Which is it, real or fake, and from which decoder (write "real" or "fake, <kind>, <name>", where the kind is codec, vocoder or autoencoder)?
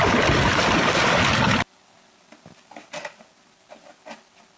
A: real